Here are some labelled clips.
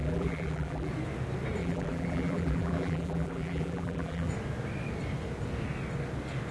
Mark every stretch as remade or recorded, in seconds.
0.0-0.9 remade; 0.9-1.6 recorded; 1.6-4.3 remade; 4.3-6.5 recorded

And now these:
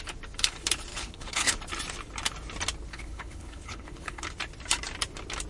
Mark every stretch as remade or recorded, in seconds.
0.0-0.9 recorded; 0.9-1.6 remade; 1.6-2.9 recorded; 2.9-4.2 remade; 4.2-5.5 recorded

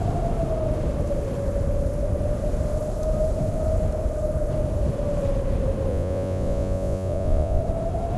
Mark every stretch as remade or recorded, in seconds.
0.0-5.9 recorded; 5.9-7.6 remade; 7.6-8.2 recorded